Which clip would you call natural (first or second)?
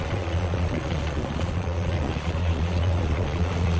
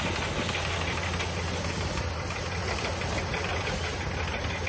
second